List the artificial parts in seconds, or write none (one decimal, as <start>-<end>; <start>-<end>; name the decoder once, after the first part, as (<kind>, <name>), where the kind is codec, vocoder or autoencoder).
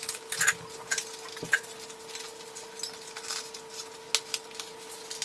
none